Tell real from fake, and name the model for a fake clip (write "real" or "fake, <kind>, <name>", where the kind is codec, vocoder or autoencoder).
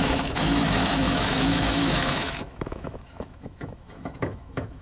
fake, autoencoder, DAC-VAE